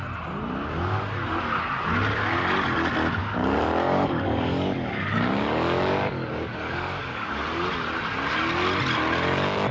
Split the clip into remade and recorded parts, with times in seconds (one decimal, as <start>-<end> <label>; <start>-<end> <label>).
0.0-3.2 recorded; 3.2-7.4 remade; 7.4-9.7 recorded